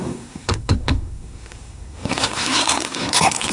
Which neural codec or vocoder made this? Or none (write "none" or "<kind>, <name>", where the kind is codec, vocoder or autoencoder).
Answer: codec, SNAC